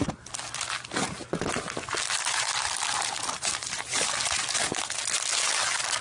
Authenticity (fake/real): real